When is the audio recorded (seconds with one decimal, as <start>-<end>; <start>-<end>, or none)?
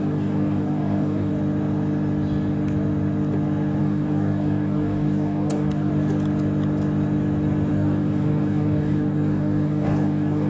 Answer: 1.3-3.8; 5.9-7.7